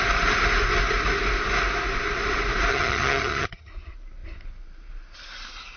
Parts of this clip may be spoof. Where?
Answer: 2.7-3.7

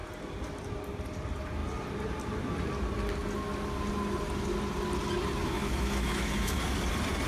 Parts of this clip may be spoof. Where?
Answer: 5.4-6.6

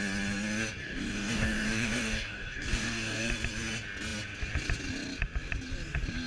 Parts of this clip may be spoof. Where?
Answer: 0.8-3.3

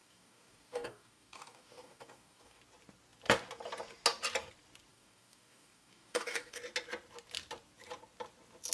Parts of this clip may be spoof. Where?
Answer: 0.0-2.6; 4.9-6.6

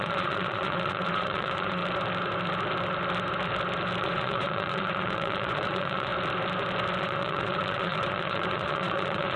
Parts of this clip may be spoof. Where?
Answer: 0.0-1.8; 4.0-6.1; 7.0-9.4

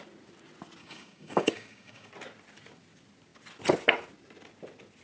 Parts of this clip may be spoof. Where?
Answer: 0.8-2.1

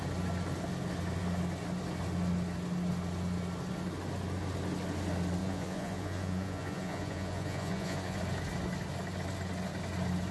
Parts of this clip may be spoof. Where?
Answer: 5.4-8.2